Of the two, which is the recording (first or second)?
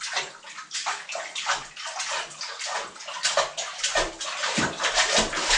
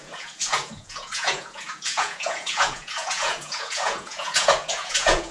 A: first